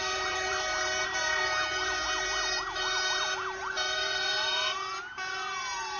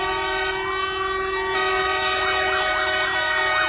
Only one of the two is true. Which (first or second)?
second